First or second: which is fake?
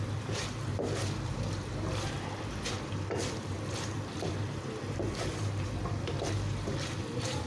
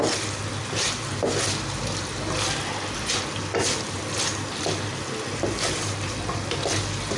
first